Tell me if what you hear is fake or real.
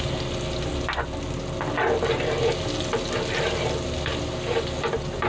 real